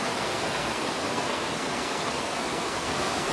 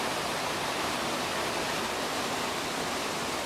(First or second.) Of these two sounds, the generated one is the first